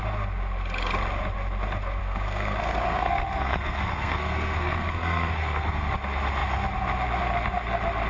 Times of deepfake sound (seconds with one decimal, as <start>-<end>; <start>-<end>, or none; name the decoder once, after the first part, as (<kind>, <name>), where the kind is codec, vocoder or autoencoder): 2.0-5.9 (codec, SNAC)